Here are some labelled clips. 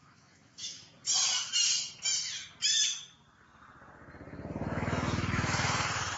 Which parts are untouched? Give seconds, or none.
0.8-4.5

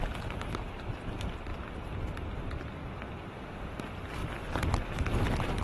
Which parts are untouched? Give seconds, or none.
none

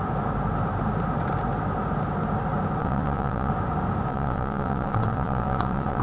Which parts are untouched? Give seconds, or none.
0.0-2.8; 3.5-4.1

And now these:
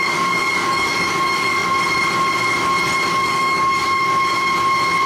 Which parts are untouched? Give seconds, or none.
1.7-3.1; 4.1-5.1

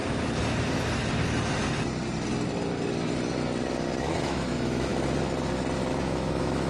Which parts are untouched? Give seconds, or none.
0.0-4.0; 4.9-5.9

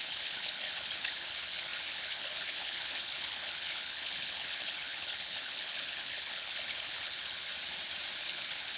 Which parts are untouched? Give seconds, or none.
7.5-8.2

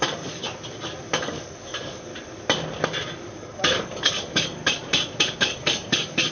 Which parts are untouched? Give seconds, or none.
0.4-1.2; 2.1-3.2; 4.6-5.4

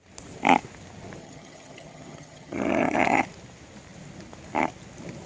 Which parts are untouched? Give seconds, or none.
0.0-1.2; 3.2-5.3